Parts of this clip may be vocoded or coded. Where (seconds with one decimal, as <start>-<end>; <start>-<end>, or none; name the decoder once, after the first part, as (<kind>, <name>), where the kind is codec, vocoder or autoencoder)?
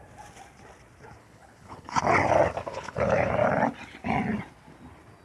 1.2-2.0 (codec, HILCodec); 2.7-3.3